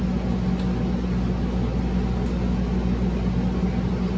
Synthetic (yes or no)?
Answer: no